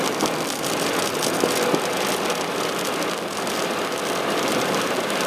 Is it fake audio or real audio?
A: real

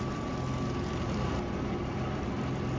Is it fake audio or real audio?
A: fake